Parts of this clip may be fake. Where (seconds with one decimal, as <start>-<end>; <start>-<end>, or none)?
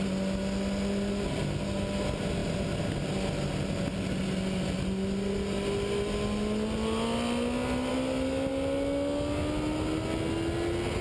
none